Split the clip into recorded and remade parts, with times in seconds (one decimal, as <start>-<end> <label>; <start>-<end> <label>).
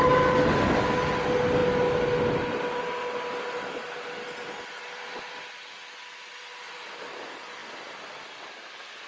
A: 0.0-9.1 recorded